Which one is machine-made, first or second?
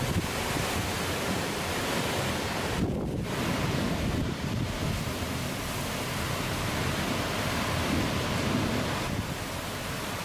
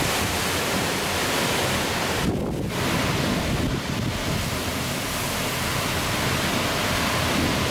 first